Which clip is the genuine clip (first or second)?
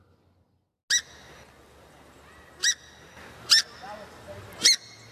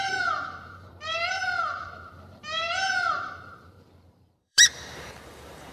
first